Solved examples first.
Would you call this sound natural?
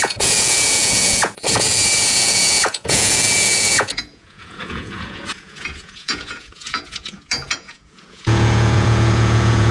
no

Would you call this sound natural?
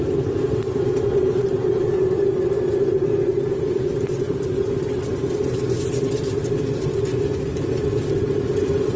yes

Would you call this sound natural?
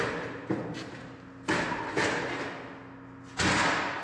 yes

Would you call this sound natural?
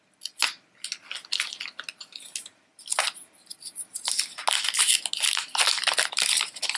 yes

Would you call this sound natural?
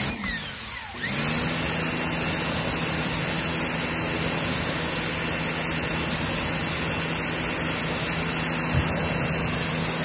yes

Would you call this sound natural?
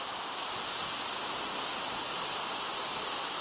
yes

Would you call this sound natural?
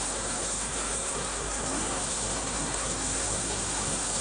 no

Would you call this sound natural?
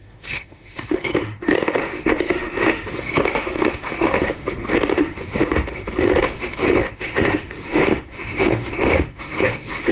no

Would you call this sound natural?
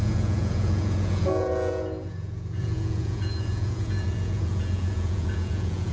no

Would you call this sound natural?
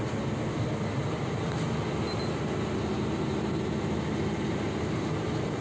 yes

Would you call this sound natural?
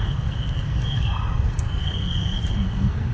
no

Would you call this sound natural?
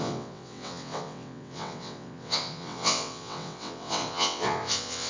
no